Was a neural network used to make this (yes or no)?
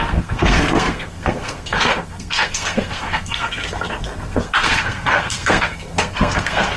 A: yes